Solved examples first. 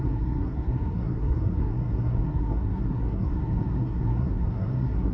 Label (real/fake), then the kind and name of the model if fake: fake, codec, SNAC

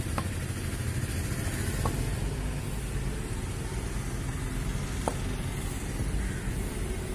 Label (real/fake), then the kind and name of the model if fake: real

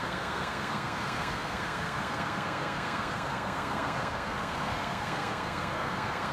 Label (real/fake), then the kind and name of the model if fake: fake, codec, SNAC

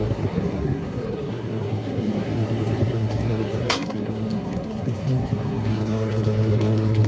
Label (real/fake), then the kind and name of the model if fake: fake, codec, SNAC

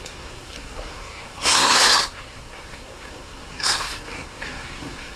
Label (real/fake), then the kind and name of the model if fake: fake, codec, SNAC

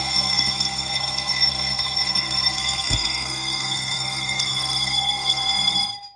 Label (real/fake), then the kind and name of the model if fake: fake, codec, SNAC